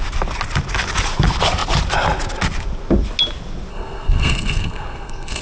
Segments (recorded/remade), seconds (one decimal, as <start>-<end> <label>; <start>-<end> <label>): 0.0-3.7 recorded; 3.7-5.4 remade